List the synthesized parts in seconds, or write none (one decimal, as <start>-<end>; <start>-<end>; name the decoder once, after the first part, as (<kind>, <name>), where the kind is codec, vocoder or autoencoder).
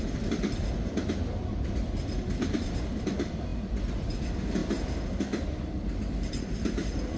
none